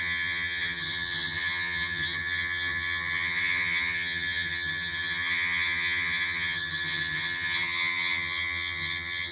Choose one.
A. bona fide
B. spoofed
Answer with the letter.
B